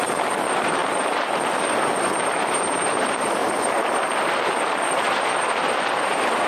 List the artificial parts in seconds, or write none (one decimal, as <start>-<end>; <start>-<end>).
0.0-6.5